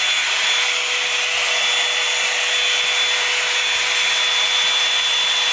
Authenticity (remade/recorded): recorded